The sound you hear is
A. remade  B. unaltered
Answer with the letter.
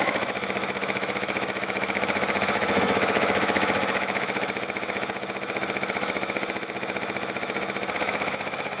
A